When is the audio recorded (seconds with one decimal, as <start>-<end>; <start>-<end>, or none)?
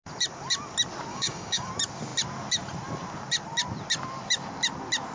0.0-1.1; 1.7-5.1